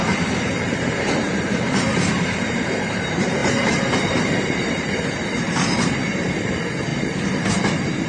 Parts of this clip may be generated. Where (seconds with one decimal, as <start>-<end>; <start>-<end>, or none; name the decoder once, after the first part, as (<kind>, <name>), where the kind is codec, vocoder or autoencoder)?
0.0-8.1 (vocoder, BigVGAN v2)